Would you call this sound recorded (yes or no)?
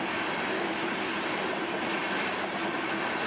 yes